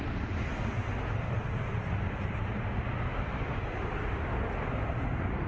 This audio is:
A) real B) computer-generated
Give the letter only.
A